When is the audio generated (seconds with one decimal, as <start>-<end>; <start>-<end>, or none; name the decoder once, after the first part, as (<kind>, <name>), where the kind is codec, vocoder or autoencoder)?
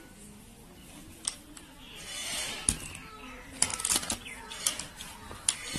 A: 0.8-1.8 (vocoder, BigVGAN v2)